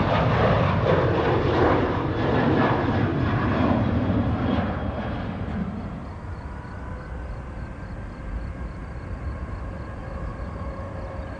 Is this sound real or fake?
real